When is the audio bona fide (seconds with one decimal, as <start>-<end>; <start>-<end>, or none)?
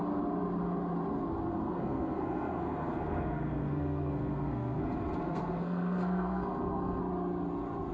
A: 0.0-1.5; 4.8-5.2; 7.0-7.9